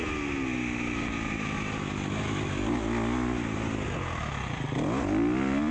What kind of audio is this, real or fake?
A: real